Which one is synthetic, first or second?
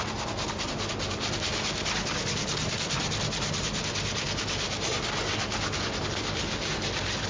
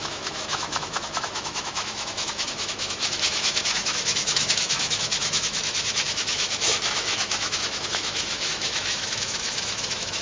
second